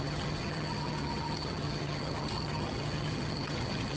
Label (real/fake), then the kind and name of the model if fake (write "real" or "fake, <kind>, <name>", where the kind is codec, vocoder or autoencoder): fake, vocoder, HiFi-GAN